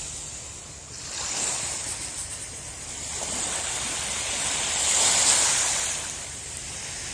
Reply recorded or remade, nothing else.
recorded